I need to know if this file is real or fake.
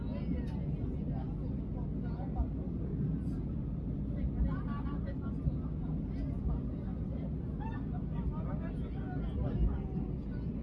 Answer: real